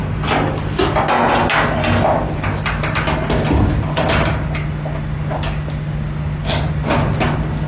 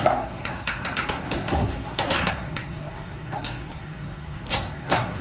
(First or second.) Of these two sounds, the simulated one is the second